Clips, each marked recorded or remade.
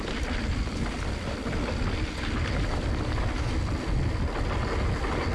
recorded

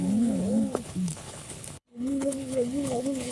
remade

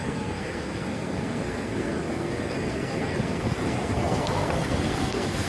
remade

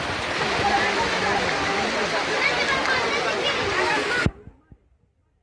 recorded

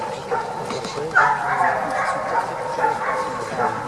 recorded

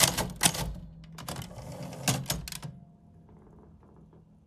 recorded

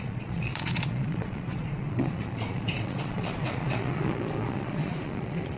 remade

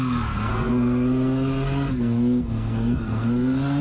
remade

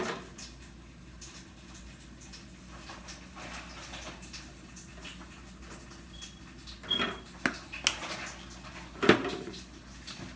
recorded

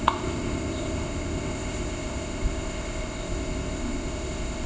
remade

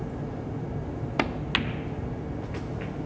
recorded